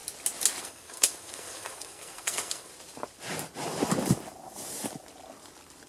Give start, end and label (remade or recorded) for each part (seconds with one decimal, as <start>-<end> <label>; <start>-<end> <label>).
0.0-0.6 recorded; 0.6-2.7 remade; 2.7-5.9 recorded